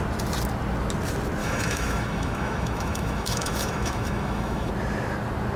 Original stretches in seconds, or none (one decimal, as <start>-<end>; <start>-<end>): 0.0-1.4; 4.7-5.6